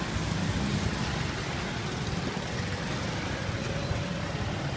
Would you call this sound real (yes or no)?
yes